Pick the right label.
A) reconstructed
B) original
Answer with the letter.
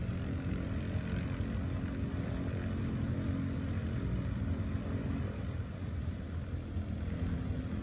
B